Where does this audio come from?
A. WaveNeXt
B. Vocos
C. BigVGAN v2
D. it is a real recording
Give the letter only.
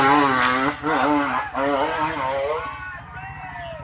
D